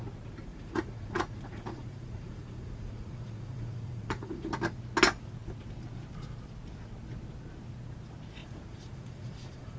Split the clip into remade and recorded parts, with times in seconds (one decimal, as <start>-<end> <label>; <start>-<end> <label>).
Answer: 0.0-0.5 recorded; 0.5-4.5 remade; 4.5-8.4 recorded; 8.4-9.8 remade